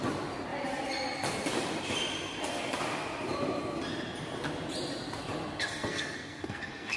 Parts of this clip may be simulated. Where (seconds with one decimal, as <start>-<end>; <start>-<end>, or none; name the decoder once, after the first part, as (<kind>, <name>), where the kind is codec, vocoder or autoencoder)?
5.5-7.0 (codec, SNAC)